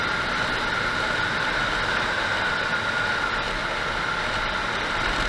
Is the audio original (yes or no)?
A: yes